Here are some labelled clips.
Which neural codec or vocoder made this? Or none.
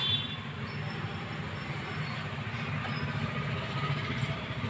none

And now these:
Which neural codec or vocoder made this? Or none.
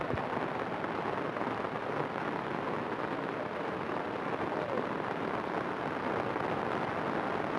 none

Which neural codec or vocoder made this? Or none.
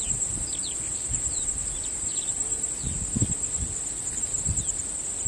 none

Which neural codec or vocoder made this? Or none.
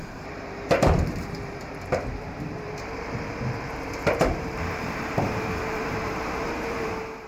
vocoder, BigVGAN v2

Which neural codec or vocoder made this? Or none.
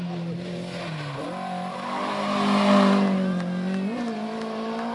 none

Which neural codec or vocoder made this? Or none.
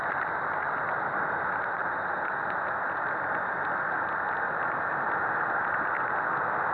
none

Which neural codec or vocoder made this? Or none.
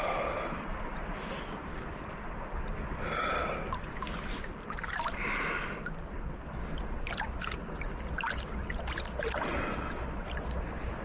none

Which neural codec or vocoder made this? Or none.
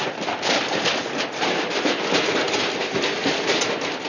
none